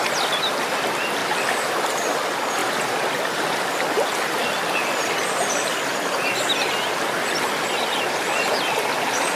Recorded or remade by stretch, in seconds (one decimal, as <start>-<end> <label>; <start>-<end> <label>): 0.0-1.2 recorded; 1.2-1.7 remade; 1.7-2.6 recorded; 2.6-3.7 remade; 3.7-9.4 recorded